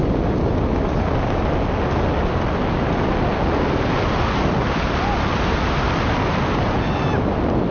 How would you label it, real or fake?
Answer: real